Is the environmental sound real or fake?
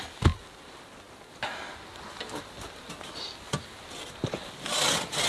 real